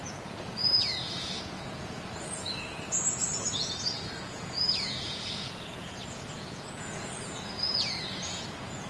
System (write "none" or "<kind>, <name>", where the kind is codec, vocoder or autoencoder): vocoder, Vocos